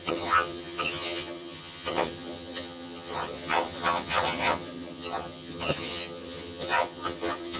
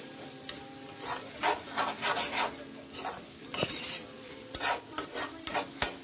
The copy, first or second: first